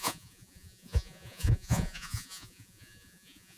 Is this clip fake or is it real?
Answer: fake